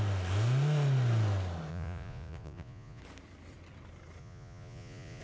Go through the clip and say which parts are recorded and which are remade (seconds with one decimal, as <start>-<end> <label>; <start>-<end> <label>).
0.0-1.7 recorded; 1.7-3.0 remade; 3.0-4.2 recorded; 4.2-5.2 remade